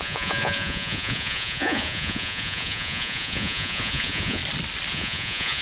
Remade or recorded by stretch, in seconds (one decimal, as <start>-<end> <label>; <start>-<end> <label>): 0.0-4.4 remade; 4.4-4.9 recorded; 4.9-5.6 remade